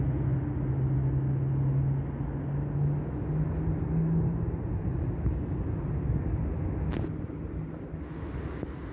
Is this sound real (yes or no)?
yes